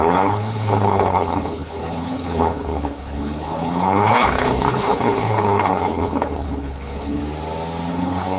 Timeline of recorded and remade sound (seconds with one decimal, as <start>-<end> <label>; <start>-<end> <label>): 0.0-7.2 remade; 7.2-7.9 recorded; 7.9-8.4 remade